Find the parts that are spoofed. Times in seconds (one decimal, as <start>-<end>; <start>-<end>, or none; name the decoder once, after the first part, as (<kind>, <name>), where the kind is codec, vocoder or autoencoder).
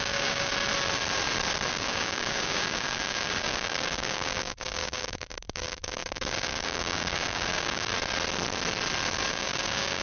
0.0-0.5 (codec, DAC); 1.7-7.9; 9.3-10.0